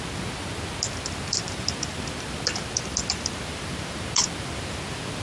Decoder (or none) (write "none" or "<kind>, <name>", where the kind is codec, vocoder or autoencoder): none